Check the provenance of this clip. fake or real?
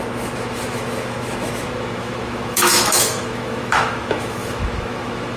fake